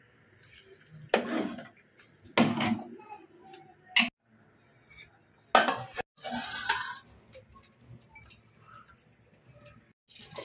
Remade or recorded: recorded